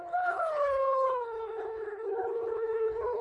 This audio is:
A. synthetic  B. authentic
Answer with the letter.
A